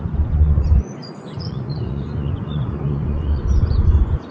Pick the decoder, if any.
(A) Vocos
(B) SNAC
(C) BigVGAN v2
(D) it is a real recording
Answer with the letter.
A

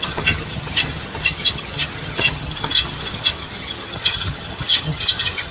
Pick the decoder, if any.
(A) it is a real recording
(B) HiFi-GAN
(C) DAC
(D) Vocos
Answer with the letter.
B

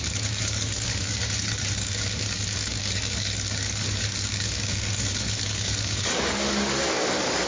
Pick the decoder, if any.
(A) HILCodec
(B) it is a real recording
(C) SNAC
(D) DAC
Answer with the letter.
D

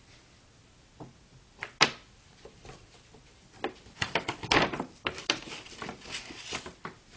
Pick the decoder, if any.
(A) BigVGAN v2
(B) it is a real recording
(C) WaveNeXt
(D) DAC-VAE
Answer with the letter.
B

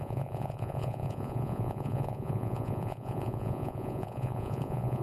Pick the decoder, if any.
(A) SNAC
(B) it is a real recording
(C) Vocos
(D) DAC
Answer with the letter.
C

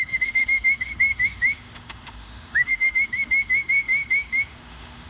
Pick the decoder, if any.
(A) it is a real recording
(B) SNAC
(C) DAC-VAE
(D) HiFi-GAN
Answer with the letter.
C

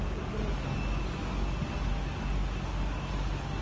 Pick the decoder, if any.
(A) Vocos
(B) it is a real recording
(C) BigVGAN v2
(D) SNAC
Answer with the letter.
B